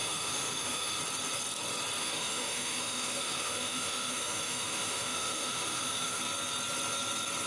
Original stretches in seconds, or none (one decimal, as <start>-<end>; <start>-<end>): 1.0-2.0; 6.2-7.5